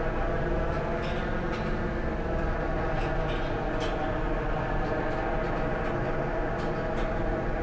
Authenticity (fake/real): real